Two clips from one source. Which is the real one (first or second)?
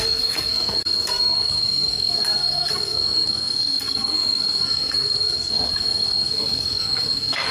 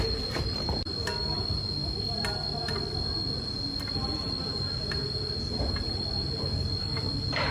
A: second